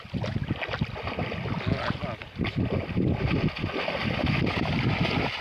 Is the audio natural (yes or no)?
yes